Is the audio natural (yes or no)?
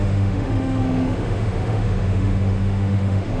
no